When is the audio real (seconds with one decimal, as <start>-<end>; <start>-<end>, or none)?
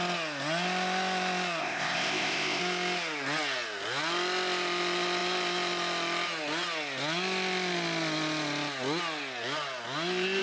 0.0-1.6; 2.6-10.4